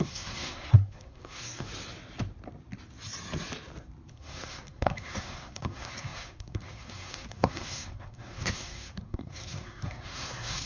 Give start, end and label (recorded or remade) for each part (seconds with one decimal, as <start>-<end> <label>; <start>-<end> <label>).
0.0-1.7 remade; 1.7-4.1 recorded; 4.1-10.7 remade